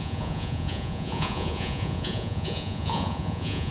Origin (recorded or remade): remade